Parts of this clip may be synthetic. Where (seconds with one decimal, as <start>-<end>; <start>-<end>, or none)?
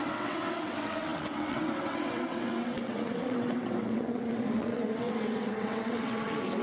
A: 0.0-6.6